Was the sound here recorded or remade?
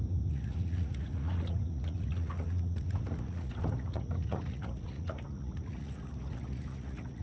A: remade